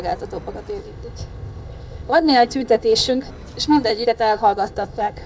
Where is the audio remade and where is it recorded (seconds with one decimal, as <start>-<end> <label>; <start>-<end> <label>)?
0.0-0.8 recorded; 0.8-3.3 remade; 3.3-3.9 recorded; 3.9-5.3 remade